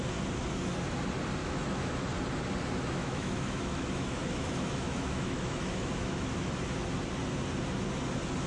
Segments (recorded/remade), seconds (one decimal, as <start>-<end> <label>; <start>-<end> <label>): 0.0-1.4 recorded; 1.4-1.9 remade; 1.9-3.0 recorded; 3.0-6.5 remade; 6.5-8.5 recorded